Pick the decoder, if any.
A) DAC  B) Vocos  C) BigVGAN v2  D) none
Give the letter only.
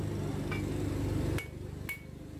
D